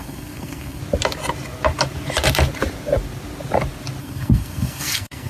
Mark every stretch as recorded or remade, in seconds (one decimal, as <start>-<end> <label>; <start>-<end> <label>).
0.0-0.8 remade; 0.8-4.0 recorded; 4.0-5.3 remade